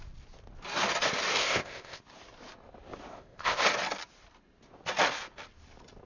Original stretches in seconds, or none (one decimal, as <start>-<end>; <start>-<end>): 0.0-1.4; 2.0-3.1; 3.6-6.1